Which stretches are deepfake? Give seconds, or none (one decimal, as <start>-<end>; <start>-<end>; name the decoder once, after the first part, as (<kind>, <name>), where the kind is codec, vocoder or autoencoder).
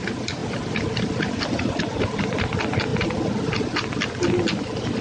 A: none